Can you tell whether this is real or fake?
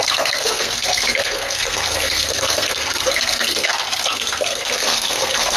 fake